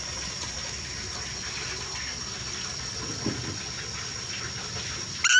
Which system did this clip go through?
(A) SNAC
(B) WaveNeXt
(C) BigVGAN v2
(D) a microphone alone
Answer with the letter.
D